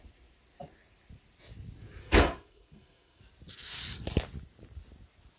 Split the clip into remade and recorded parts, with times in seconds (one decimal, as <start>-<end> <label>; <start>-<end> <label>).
0.0-2.0 recorded; 2.0-3.2 remade; 3.2-5.4 recorded